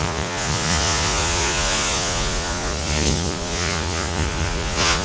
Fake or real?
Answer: fake